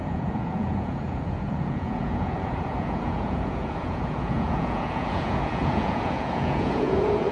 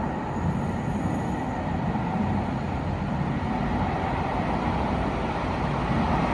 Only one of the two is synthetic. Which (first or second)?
first